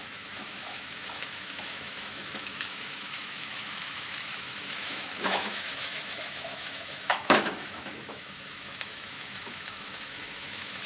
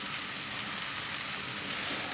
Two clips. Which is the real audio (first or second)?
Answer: second